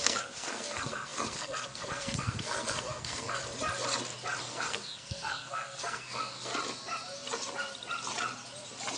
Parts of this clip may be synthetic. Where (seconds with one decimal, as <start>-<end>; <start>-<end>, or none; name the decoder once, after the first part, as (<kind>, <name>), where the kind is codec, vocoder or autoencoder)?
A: 0.0-3.4 (codec, SNAC); 4.4-6.5